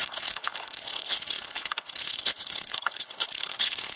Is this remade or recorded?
remade